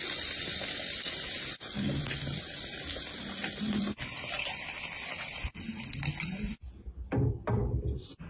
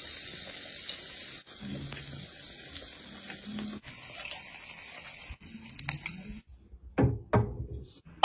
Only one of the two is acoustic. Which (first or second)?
second